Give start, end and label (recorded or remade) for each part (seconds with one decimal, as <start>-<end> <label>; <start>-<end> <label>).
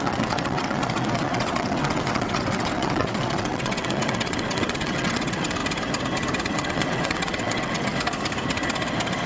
0.0-5.6 remade; 5.6-6.5 recorded; 6.5-7.9 remade; 7.9-9.3 recorded